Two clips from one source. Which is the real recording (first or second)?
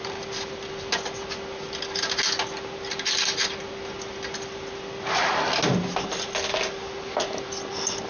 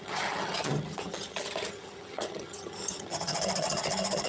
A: first